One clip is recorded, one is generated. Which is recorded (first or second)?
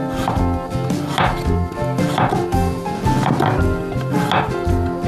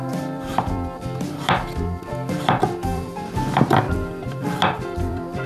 first